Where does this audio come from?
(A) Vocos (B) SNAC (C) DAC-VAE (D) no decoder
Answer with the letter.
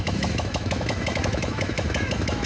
C